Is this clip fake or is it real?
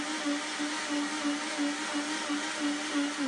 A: real